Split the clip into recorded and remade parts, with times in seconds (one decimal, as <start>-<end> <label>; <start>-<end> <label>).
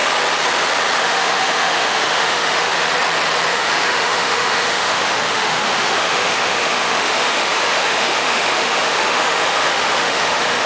0.0-1.0 recorded; 1.0-2.7 remade; 2.7-3.5 recorded; 3.5-10.7 remade